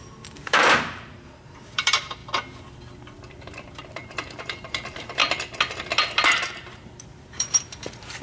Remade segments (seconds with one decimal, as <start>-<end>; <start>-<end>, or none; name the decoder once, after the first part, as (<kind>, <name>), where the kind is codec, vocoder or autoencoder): 0.0-2.2 (vocoder, BigVGAN v2); 3.7-5.2; 6.3-8.2